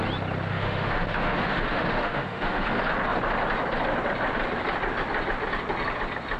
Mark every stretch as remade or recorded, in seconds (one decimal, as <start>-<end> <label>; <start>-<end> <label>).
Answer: 0.0-0.5 recorded; 0.5-2.7 remade; 2.7-6.4 recorded